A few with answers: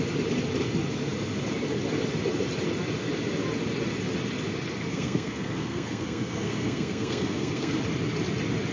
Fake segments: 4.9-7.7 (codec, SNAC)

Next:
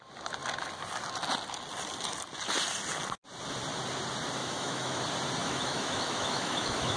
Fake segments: 4.4-5.0 (autoencoder, DAC-VAE); 5.4-7.0

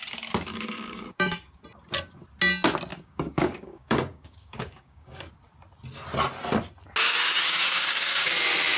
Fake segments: 0.5-1.6 (codec, DAC); 2.9-5.3; 7.1-8.3

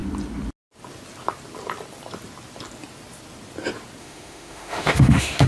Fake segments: 4.0-5.5 (autoencoder, DAC-VAE)

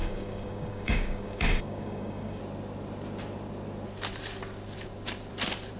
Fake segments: 0.0-2.4 (codec, DAC)

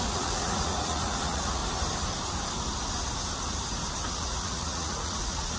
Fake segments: 0.0-1.6 (vocoder, Vocos); 4.1-5.6

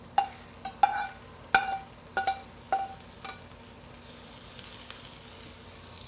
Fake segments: none

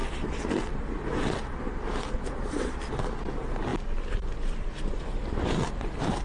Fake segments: 0.0-2.9 (vocoder, BigVGAN v2); 3.7-6.2